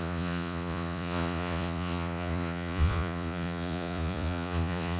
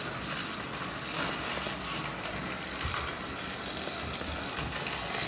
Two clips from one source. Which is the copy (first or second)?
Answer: first